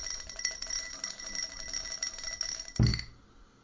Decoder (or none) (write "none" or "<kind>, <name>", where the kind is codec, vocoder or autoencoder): none